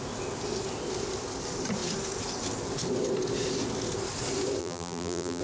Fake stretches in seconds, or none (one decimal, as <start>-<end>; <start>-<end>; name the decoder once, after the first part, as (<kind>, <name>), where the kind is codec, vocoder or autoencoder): 4.6-5.4 (vocoder, BigVGAN v2)